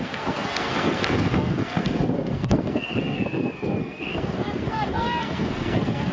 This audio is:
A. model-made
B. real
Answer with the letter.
A